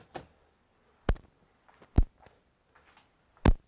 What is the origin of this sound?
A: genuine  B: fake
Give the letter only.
A